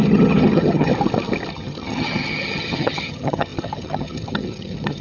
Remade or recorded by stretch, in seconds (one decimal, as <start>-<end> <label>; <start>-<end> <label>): 0.0-0.9 remade; 0.9-1.5 recorded; 1.5-5.0 remade